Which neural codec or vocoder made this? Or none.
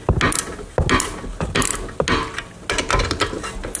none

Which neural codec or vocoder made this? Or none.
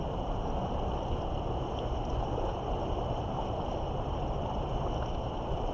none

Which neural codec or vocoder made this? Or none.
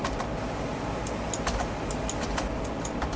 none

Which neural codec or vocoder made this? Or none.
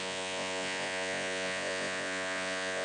vocoder, Vocos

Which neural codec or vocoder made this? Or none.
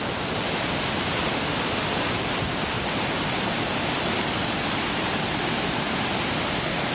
none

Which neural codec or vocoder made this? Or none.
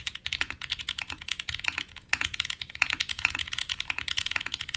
vocoder, Vocos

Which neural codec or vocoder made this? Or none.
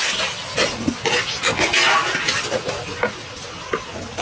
none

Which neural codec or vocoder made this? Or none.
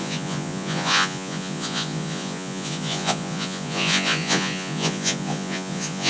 vocoder, Vocos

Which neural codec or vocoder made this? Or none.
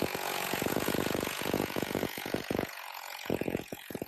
vocoder, Vocos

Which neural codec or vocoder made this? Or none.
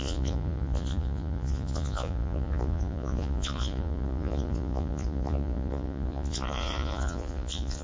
vocoder, Vocos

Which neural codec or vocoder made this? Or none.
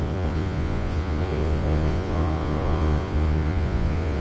vocoder, Vocos